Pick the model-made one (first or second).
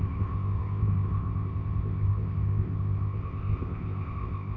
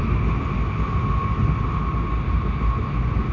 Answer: first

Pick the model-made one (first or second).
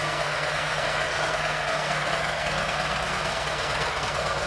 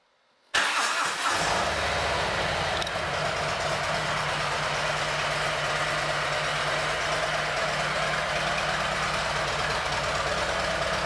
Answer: first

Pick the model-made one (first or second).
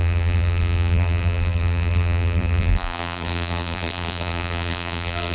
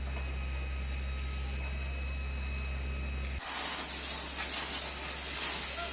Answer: first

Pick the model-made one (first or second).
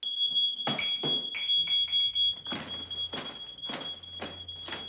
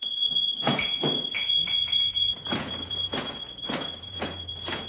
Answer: second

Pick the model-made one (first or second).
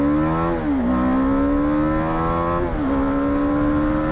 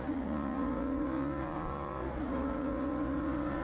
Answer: second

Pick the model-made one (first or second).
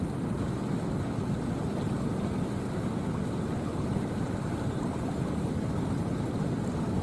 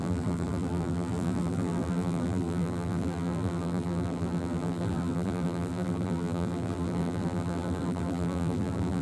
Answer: second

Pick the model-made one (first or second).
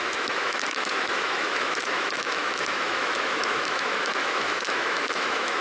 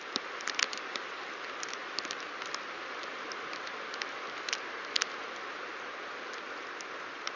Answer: first